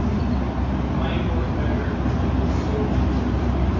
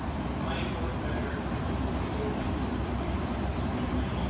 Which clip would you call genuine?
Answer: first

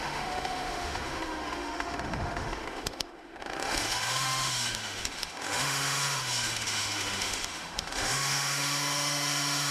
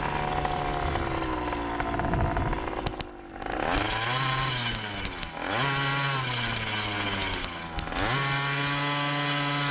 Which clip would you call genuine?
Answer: second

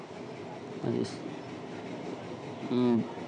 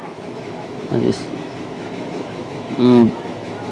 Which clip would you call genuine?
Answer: first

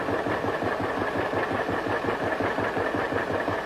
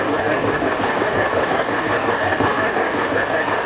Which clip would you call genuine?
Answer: first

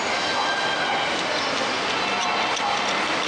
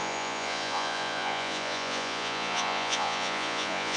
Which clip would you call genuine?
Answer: first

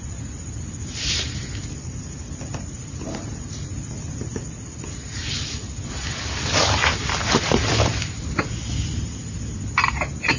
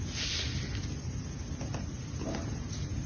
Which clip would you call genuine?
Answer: second